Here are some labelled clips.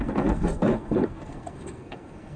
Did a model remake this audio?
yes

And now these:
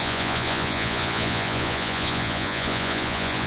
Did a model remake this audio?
yes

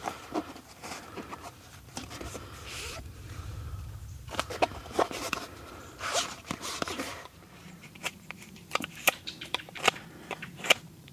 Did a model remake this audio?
yes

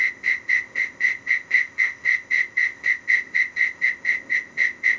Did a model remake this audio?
yes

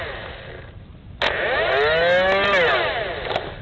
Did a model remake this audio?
no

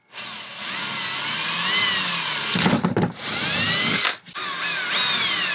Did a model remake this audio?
no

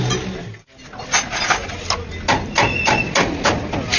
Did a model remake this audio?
no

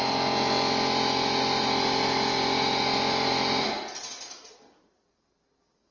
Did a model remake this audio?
no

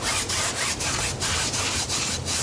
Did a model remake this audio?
no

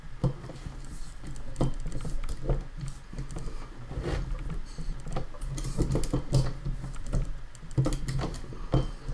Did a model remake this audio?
no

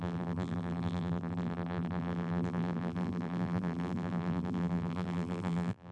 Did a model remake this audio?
yes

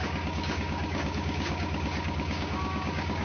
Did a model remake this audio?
yes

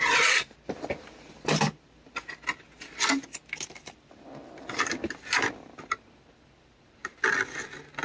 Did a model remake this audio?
no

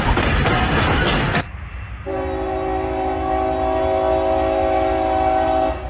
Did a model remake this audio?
no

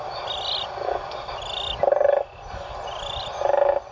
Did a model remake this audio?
no